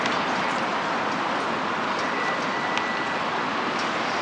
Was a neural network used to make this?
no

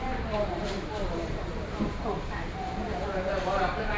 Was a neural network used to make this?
yes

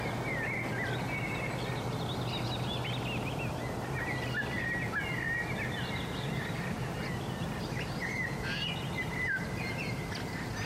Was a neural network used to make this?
no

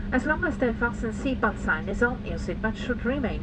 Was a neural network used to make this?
yes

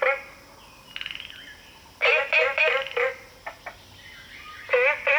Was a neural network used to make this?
no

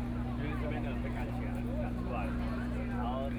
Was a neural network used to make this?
no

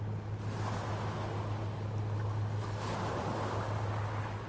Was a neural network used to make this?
no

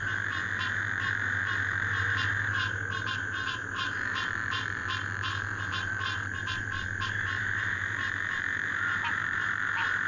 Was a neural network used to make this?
yes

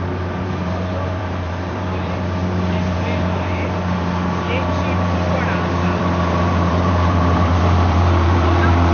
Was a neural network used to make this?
yes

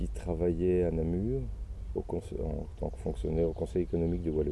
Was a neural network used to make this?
no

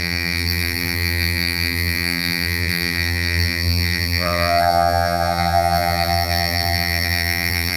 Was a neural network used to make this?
yes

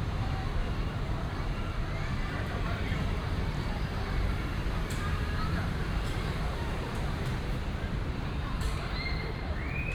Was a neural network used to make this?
yes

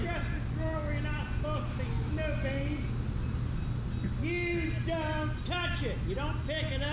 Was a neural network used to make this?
no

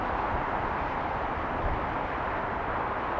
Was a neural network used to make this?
yes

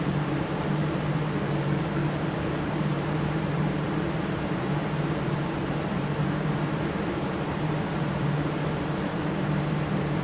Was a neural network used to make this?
yes